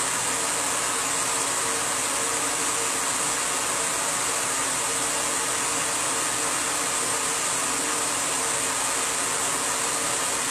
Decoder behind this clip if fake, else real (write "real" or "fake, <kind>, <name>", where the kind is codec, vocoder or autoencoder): real